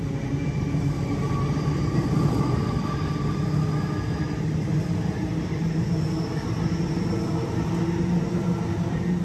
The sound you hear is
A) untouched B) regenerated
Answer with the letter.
A